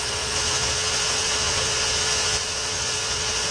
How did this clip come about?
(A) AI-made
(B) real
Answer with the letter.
A